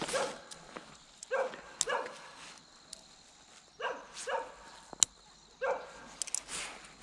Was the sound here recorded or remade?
recorded